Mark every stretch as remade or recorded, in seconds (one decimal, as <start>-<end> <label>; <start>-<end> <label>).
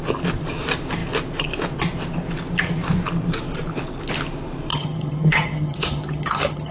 0.0-4.7 recorded; 4.7-6.7 remade